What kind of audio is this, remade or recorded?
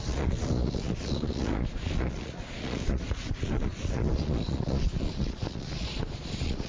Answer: remade